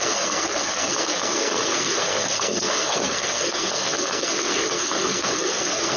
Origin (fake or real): fake